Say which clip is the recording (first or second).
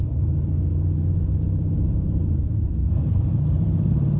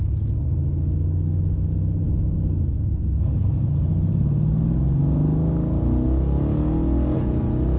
second